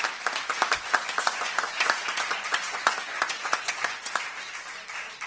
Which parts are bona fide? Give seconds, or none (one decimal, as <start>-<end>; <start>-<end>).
0.0-1.0; 4.2-5.3